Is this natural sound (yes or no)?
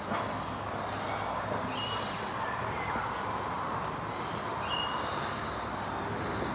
yes